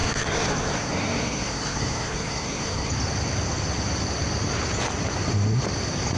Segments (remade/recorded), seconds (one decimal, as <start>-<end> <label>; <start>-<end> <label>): 0.0-2.9 remade; 2.9-6.2 recorded